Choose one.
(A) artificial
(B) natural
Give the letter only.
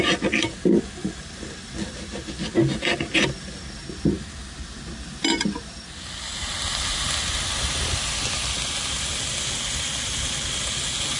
B